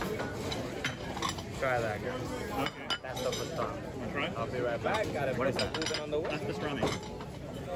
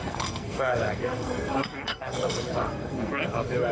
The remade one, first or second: second